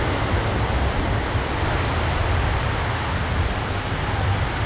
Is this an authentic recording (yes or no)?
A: yes